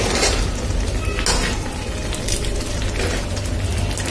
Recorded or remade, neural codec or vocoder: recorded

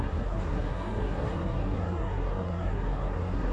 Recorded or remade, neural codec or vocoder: remade, codec, SNAC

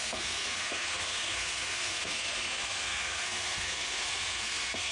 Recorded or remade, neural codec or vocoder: remade, codec, SNAC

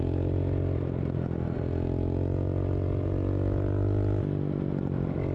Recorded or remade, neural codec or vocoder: recorded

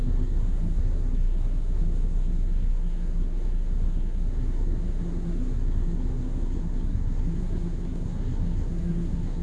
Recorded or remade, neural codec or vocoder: remade, codec, SNAC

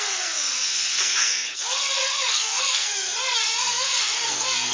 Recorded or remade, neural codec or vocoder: remade, codec, SNAC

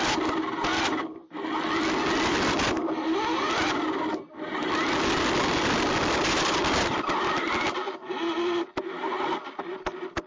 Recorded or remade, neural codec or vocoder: recorded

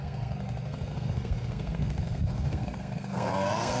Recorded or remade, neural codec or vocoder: remade, codec, SNAC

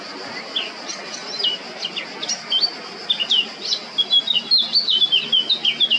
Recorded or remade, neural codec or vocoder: recorded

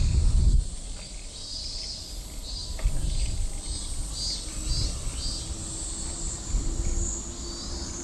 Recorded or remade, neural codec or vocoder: recorded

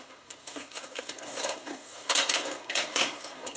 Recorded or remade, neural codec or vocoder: remade, codec, SNAC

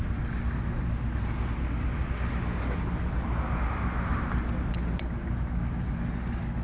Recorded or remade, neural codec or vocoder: recorded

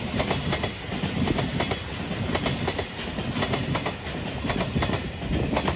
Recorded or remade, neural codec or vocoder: recorded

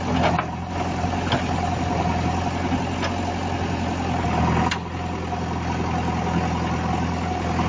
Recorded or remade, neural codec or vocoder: recorded